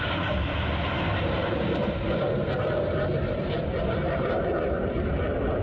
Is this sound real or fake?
real